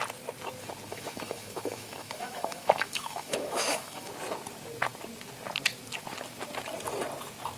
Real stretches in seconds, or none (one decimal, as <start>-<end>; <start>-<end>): 0.0-0.9; 4.1-7.6

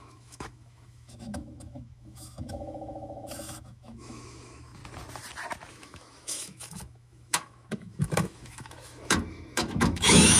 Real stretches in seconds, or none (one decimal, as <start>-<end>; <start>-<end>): 4.8-5.7

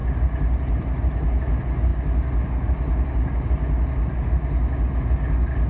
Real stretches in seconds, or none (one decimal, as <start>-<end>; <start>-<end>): 0.0-5.7

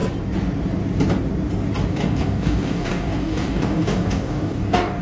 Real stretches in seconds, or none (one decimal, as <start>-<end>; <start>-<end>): 0.0-1.9

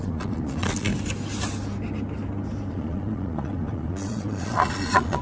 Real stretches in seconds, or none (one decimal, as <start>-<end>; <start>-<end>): 0.9-2.7

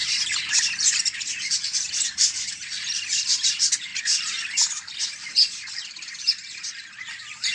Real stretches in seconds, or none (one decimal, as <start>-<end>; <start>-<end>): none

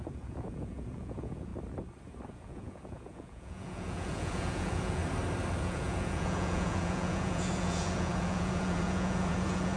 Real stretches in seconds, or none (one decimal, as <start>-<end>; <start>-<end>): 1.5-2.3; 5.0-5.6